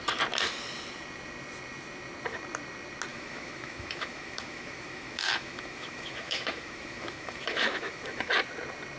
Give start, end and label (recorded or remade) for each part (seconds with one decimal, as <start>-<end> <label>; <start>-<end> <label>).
0.0-3.1 recorded; 3.1-8.3 remade; 8.3-9.0 recorded